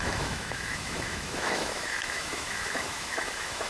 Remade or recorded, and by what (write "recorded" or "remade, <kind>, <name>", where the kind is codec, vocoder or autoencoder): remade, autoencoder, DAC-VAE